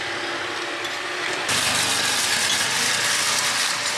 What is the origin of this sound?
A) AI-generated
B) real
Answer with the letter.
B